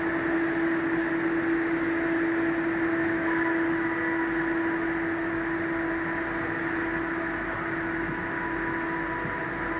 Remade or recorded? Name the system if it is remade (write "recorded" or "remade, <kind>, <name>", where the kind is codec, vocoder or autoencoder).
recorded